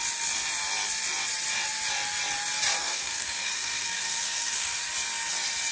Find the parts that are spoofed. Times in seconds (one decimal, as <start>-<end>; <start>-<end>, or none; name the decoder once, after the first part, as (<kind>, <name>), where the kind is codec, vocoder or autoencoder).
2.8-4.8 (codec, SNAC)